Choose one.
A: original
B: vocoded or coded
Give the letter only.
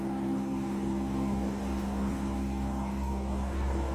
B